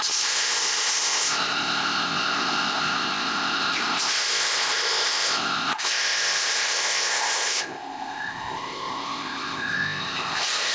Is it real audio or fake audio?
fake